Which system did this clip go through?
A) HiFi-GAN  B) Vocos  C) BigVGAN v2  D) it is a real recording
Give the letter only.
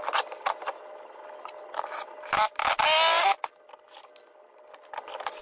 D